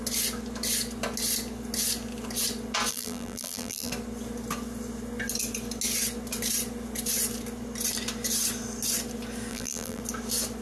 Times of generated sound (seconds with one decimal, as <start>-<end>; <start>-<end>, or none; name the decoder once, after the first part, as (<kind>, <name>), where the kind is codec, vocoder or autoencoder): 2.9-3.9 (vocoder, BigVGAN v2); 9.5-10.0